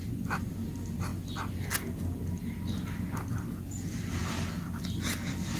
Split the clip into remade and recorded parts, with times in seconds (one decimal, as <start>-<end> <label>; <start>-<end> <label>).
0.0-5.6 recorded